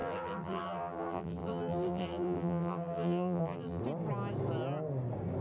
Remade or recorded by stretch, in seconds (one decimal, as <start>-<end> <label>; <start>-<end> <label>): 0.0-3.8 remade; 3.8-5.4 recorded